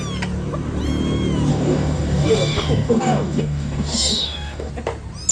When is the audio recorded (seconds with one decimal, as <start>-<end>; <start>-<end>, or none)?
0.0-1.5; 4.7-5.3